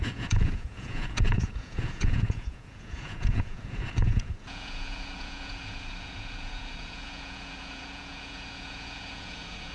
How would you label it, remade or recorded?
remade